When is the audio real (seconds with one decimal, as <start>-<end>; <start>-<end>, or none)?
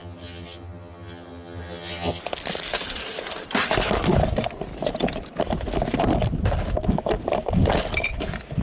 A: 2.2-8.6